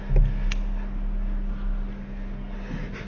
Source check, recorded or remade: recorded